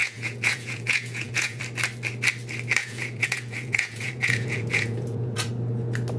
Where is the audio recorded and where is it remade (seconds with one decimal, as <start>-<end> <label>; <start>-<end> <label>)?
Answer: 0.0-1.6 remade; 1.6-2.8 recorded; 2.8-5.5 remade; 5.5-6.2 recorded